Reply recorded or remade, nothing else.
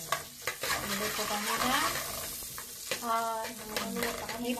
recorded